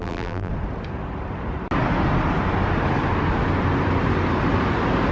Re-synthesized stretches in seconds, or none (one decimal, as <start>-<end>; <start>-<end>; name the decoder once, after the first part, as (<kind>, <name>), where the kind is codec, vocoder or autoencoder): 0.0-0.5 (vocoder, BigVGAN v2)